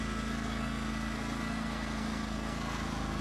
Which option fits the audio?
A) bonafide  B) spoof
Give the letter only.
B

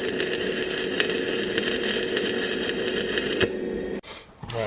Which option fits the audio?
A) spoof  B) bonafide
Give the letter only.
B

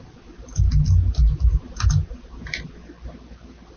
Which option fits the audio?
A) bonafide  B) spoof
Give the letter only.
A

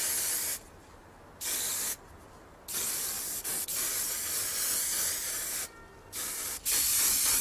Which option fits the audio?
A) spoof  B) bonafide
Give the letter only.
B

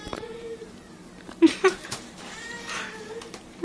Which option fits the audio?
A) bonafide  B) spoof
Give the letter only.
B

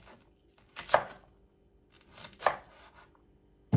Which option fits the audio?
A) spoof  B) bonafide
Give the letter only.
B